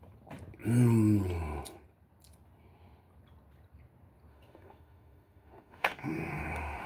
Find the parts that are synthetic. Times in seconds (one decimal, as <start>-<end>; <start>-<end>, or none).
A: 4.3-6.9